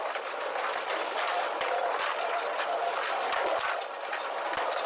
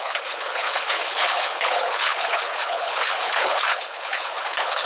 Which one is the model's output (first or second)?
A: second